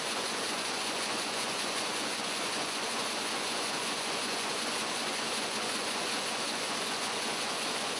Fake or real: fake